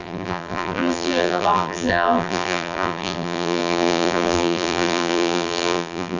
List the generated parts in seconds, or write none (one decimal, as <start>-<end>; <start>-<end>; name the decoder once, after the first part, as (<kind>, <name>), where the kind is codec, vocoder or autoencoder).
0.0-6.2 (vocoder, BigVGAN v2)